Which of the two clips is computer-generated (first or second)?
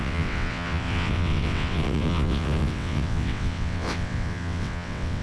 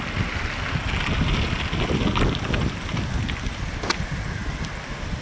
first